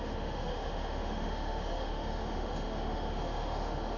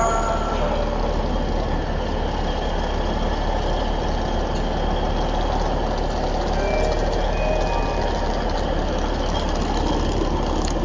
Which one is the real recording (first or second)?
second